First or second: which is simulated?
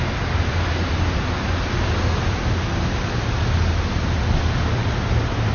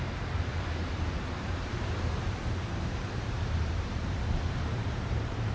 second